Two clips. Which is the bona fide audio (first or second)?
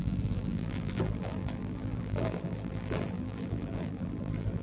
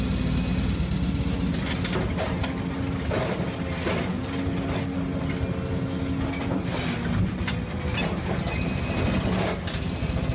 second